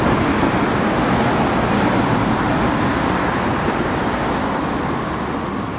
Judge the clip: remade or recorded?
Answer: recorded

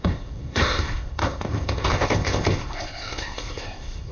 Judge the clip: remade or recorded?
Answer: remade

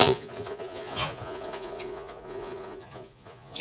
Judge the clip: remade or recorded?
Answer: remade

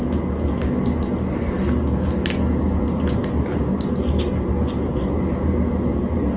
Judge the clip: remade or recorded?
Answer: recorded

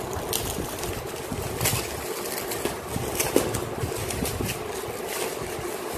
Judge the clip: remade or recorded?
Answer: recorded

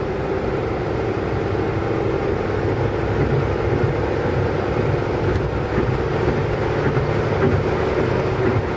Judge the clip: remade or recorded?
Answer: recorded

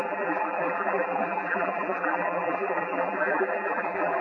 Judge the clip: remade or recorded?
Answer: remade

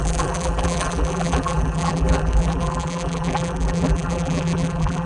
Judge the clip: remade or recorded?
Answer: remade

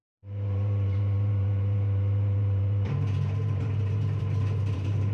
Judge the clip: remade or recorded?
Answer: remade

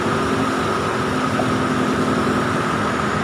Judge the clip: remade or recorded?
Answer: recorded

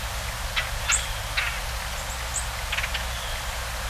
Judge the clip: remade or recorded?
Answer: recorded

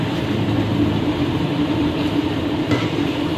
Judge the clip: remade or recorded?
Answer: remade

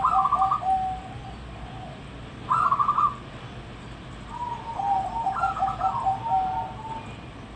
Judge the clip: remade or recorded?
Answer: recorded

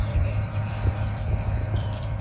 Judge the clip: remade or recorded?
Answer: remade